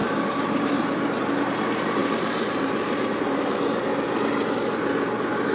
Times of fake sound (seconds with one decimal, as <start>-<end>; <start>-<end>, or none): 0.0-0.7; 2.0-3.6